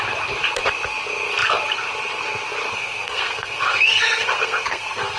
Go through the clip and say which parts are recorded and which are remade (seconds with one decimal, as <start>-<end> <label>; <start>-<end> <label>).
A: 0.0-2.7 recorded; 2.7-5.2 remade